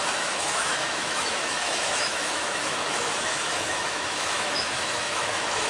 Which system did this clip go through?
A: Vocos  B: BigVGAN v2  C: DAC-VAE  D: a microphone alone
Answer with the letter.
C